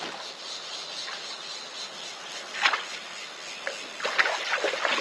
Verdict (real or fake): real